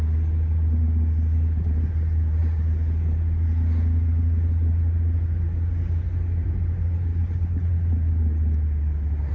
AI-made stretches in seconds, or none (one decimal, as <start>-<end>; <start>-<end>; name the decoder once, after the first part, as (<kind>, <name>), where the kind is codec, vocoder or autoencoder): 7.1-7.7 (codec, HILCodec)